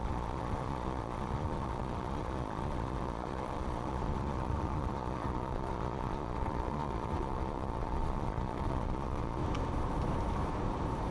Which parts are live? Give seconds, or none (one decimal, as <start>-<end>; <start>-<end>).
9.4-11.1

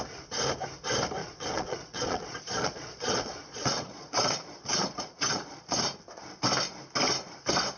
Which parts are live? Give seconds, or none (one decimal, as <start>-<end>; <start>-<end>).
0.0-1.2; 5.8-7.8

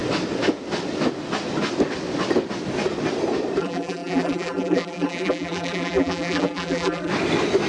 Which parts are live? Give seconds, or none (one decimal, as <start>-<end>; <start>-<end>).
0.0-3.6; 7.1-7.7

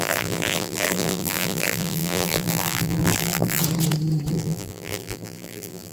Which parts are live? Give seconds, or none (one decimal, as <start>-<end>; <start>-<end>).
3.6-4.3